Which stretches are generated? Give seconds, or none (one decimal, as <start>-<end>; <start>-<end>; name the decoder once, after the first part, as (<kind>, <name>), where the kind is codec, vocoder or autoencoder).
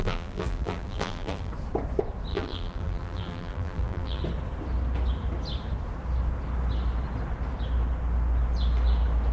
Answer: 0.0-1.5 (vocoder, BigVGAN v2); 2.3-4.2